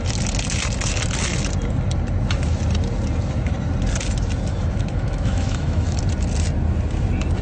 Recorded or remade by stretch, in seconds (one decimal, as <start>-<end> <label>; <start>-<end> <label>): 0.0-4.5 recorded; 4.5-6.0 remade; 6.0-7.4 recorded